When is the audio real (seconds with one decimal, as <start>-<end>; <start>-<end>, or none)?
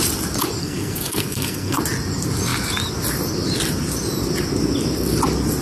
0.0-0.6; 1.8-5.6